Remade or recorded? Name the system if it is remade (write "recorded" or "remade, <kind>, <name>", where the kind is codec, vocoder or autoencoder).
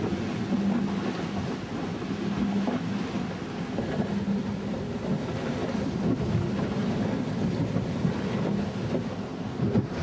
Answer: recorded